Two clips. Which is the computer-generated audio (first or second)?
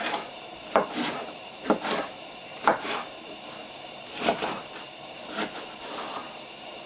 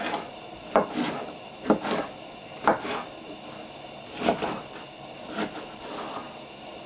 first